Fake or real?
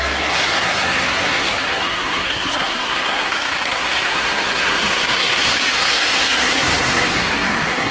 fake